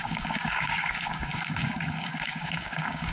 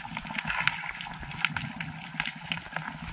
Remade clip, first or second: first